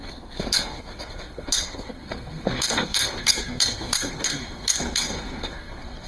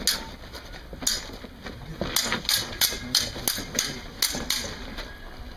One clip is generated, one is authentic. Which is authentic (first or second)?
second